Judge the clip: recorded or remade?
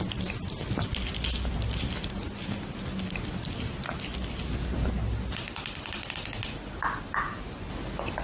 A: recorded